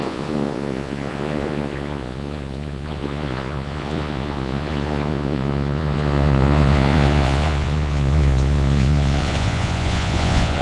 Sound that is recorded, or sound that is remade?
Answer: remade